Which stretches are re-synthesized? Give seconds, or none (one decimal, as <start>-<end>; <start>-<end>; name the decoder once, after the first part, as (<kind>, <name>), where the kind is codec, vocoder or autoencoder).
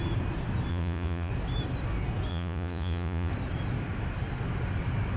0.7-1.3 (vocoder, Vocos); 2.3-3.3